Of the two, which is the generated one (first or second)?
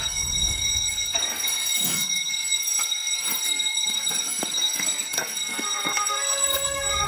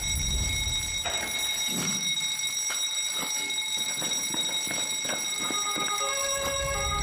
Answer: first